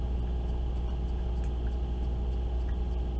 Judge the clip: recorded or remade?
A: recorded